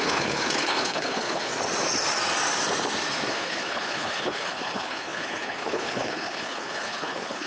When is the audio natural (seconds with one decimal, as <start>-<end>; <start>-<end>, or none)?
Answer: 1.5-3.3